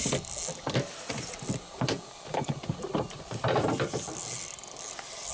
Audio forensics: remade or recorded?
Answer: recorded